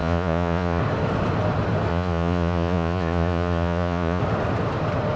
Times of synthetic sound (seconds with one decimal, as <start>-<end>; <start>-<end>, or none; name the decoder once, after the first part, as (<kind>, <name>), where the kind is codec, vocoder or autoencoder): 0.0-0.8 (vocoder, Vocos); 1.9-4.2